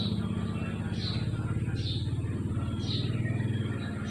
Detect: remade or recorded recorded